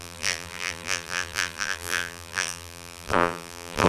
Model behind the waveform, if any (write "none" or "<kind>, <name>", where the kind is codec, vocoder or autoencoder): vocoder, BigVGAN v2